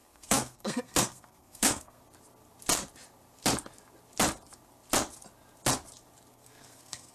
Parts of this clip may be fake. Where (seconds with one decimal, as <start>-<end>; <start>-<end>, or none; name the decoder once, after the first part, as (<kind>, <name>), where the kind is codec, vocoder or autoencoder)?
0.0-2.0 (codec, SNAC); 6.3-7.1